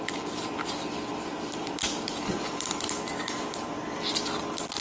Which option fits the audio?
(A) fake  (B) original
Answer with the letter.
B